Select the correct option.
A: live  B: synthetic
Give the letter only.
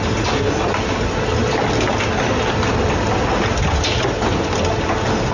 A